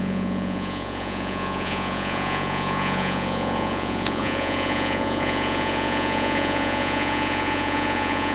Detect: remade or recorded remade